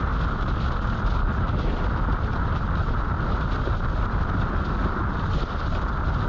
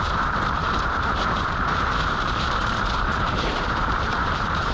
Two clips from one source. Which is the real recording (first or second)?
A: first